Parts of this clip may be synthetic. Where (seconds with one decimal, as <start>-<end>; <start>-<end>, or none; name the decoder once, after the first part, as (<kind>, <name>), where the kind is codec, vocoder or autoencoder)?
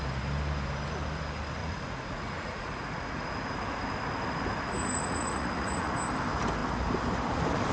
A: 1.6-3.2 (vocoder, Vocos); 4.8-5.9